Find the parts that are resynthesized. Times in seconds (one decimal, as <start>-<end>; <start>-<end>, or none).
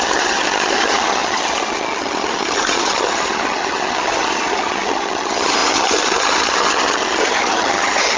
0.0-8.2